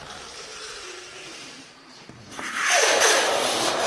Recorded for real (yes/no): no